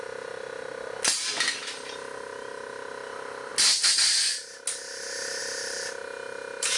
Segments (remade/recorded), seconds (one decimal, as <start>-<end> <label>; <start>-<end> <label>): 0.0-6.8 recorded